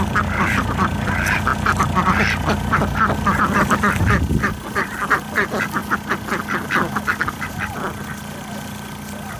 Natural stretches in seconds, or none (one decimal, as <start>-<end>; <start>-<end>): 1.5-4.0; 5.8-9.4